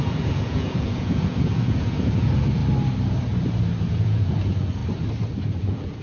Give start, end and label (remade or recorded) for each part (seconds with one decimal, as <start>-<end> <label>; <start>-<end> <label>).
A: 0.0-2.6 remade; 2.6-3.8 recorded; 3.8-4.8 remade; 4.8-5.4 recorded; 5.4-6.0 remade